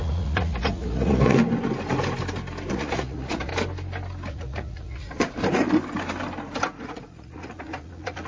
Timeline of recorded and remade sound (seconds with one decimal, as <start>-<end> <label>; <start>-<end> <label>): 0.0-1.4 remade; 1.4-2.7 recorded; 2.7-3.5 remade; 3.5-4.3 recorded; 4.3-5.4 remade; 5.4-6.8 recorded; 6.8-8.3 remade